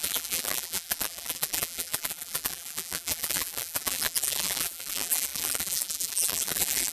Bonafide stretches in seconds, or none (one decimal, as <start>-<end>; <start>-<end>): none